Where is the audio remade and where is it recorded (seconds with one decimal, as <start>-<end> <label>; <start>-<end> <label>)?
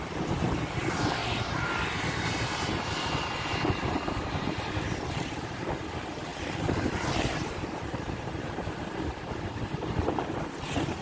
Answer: 0.0-1.2 recorded; 1.2-5.6 remade; 5.6-6.3 recorded; 6.3-8.8 remade; 8.8-11.0 recorded